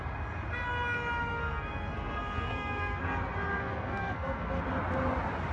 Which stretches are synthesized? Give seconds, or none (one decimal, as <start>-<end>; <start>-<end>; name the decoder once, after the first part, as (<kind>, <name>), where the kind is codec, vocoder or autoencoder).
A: 1.3-3.0 (codec, SNAC); 3.5-4.6